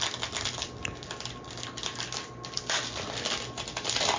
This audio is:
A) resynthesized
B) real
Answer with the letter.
B